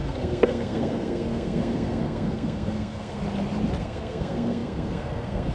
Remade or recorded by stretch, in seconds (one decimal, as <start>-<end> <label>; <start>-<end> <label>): 0.0-3.2 remade; 3.2-3.8 recorded; 3.8-5.5 remade